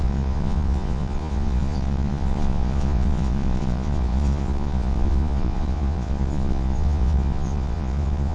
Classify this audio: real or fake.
fake